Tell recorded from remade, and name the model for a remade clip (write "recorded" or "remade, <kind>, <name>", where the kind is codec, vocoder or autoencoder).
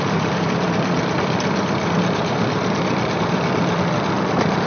remade, vocoder, BigVGAN v2